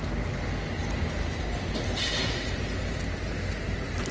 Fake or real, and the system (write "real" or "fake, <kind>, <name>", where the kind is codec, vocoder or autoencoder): real